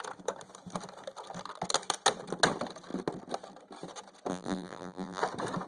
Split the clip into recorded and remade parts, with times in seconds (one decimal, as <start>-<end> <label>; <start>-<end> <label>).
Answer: 0.0-4.3 recorded; 4.3-5.2 remade; 5.2-5.7 recorded